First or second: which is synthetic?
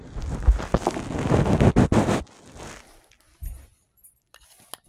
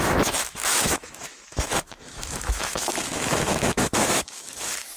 second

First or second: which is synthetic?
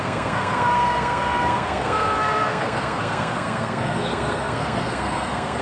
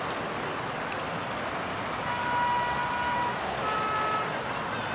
first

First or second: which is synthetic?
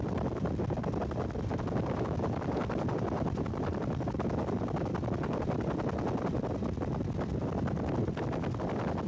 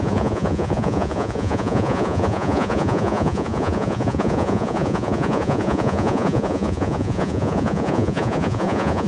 second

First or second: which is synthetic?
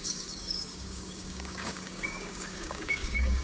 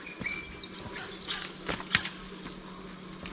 first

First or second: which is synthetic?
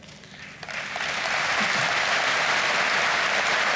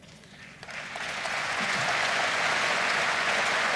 second